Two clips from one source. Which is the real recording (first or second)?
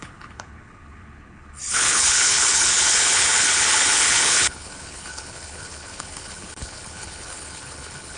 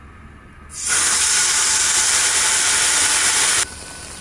second